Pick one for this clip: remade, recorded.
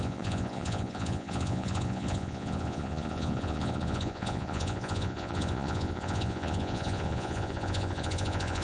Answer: remade